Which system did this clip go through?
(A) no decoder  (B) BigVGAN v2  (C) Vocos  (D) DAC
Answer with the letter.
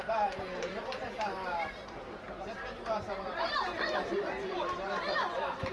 B